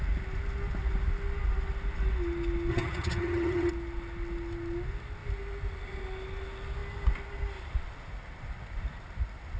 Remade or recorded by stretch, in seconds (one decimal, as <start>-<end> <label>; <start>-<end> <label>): 0.0-2.7 recorded; 2.7-3.7 remade; 3.7-9.6 recorded